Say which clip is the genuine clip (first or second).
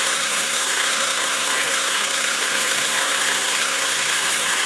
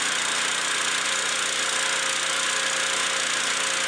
second